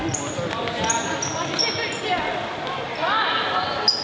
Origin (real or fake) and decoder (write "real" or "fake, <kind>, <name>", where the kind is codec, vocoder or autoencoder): real